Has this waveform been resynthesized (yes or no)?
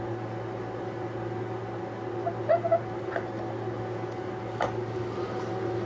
no